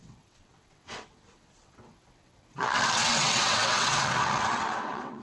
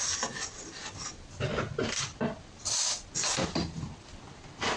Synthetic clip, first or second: first